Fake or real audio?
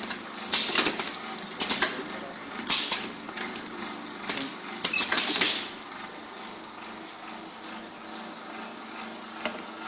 real